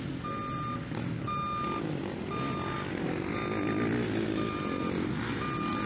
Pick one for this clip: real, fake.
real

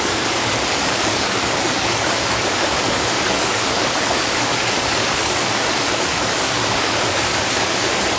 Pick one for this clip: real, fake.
fake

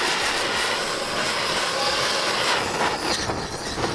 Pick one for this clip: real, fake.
real